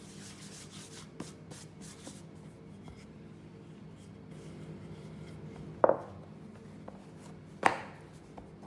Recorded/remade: recorded